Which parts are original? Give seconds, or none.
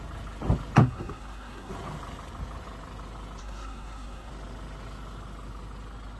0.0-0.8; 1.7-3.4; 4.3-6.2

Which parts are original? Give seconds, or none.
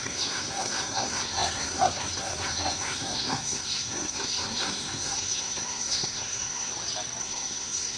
6.7-7.2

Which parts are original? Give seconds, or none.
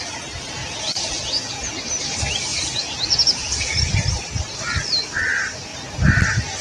0.0-0.6; 1.7-2.5; 3.7-6.6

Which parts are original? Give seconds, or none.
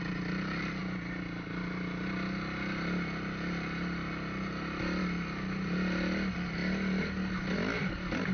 0.0-8.3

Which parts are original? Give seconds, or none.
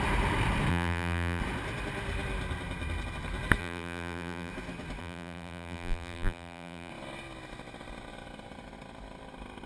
0.0-0.7; 1.4-3.6; 4.5-5.0; 6.9-9.7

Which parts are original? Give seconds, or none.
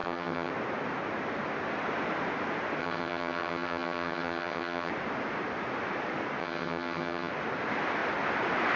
0.5-2.8; 4.9-6.4; 7.3-8.8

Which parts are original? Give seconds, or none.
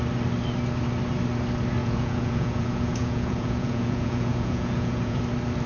0.0-1.8; 5.2-5.7